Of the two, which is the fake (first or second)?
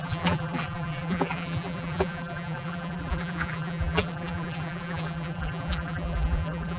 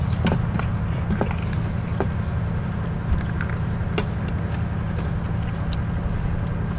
first